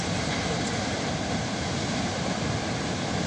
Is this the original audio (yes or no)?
yes